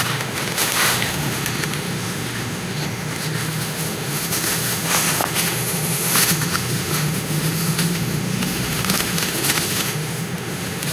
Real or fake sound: fake